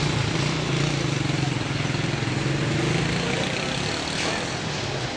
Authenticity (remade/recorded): remade